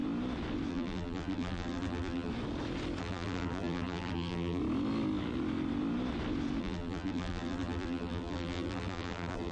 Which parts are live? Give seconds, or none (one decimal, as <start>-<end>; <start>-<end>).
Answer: 0.0-0.7; 2.3-3.0; 4.6-6.6